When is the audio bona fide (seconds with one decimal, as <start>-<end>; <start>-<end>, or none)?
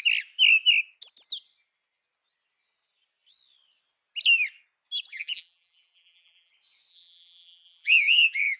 0.0-5.1; 6.5-6.9